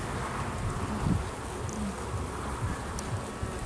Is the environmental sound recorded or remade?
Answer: recorded